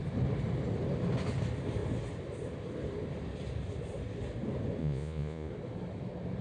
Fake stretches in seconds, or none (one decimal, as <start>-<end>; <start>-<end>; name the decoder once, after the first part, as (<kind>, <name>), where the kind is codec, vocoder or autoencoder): 4.8-5.5 (vocoder, Vocos)